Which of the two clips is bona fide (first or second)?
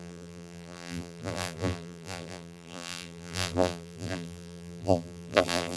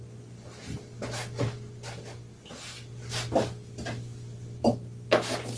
second